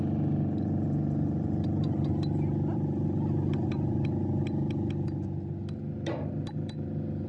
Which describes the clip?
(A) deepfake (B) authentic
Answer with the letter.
B